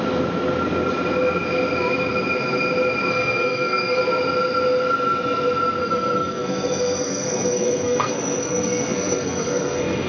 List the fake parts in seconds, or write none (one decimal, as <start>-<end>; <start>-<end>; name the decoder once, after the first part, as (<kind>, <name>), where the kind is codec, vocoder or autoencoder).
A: 3.1-4.0 (codec, SNAC); 5.8-10.1